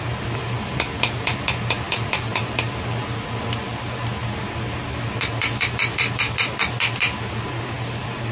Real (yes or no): yes